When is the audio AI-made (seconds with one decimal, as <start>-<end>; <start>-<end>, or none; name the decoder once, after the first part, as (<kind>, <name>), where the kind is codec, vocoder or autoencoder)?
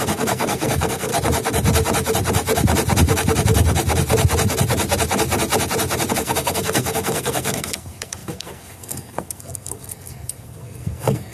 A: 0.0-1.1 (codec, SNAC); 6.1-11.3